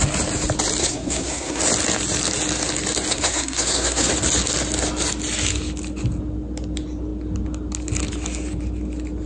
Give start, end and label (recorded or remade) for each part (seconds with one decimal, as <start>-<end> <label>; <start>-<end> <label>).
0.0-0.8 recorded; 0.8-1.6 remade; 1.6-3.1 recorded; 3.1-4.1 remade; 4.1-9.3 recorded